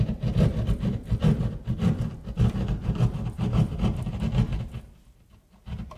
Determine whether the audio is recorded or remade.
recorded